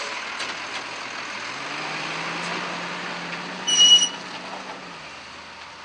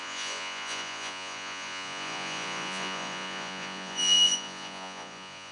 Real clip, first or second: first